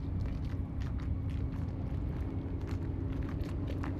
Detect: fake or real real